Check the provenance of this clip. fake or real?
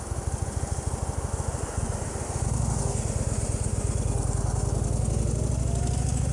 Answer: real